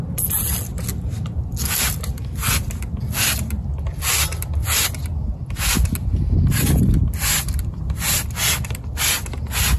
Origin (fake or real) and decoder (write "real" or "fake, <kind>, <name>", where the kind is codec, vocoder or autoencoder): real